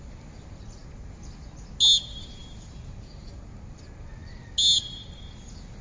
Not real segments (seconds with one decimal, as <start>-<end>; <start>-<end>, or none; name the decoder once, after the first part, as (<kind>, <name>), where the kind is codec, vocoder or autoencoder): none